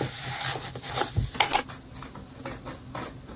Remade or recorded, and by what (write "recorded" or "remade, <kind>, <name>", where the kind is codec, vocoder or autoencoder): recorded